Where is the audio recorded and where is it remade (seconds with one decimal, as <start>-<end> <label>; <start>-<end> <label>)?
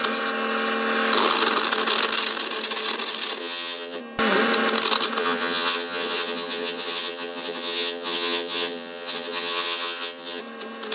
0.0-3.4 recorded; 3.4-4.0 remade; 4.0-5.2 recorded; 5.2-10.4 remade; 10.4-10.9 recorded